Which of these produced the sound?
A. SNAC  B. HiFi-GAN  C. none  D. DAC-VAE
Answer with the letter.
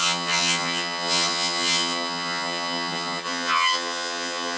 B